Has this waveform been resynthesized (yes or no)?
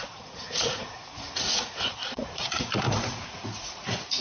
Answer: yes